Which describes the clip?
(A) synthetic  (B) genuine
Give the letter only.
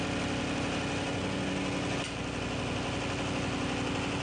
B